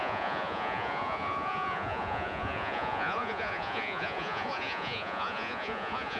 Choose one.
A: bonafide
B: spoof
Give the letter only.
B